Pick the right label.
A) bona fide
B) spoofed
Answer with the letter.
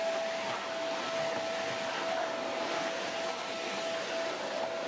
A